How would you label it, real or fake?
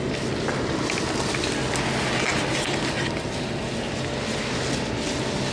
real